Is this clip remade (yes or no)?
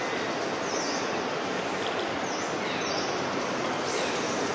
no